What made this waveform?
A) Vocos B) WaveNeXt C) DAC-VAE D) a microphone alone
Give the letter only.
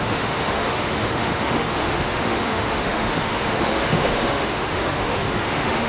C